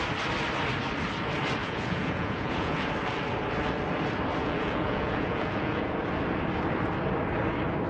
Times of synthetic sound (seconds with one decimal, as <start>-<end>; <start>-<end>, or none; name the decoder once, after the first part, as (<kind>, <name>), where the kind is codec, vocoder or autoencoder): 1.6-2.9 (vocoder, Vocos); 4.4-5.9

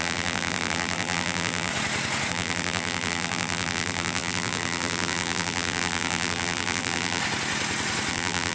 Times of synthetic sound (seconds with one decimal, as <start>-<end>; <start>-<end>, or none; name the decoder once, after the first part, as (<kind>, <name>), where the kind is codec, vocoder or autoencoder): 0.0-1.7 (vocoder, BigVGAN v2); 2.3-7.2; 8.1-8.5

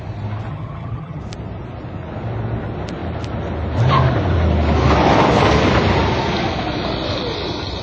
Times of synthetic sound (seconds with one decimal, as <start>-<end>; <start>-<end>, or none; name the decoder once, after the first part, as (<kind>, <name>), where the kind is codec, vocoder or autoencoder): 0.5-1.2 (vocoder, HiFi-GAN)

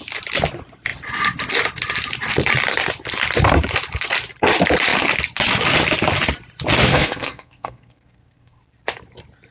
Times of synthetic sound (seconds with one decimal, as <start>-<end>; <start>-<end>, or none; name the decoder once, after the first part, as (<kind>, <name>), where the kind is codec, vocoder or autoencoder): 6.9-8.6 (codec, SNAC)

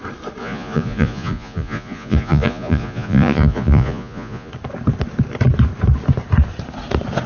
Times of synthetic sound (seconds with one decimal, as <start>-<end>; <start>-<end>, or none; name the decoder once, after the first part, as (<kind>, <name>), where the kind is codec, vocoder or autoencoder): 0.4-4.5 (vocoder, Vocos)

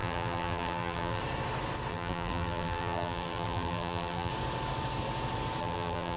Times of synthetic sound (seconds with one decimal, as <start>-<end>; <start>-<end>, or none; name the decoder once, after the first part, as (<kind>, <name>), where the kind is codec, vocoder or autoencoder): 0.0-1.2 (vocoder, BigVGAN v2); 1.9-4.3; 5.6-6.2